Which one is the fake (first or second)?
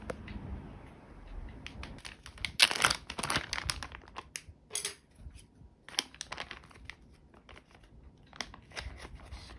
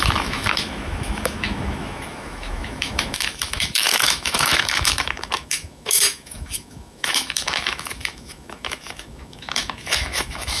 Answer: second